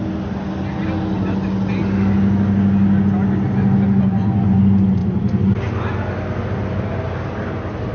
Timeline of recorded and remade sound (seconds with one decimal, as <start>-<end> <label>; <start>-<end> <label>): 0.0-7.9 recorded